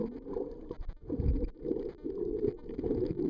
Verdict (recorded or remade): remade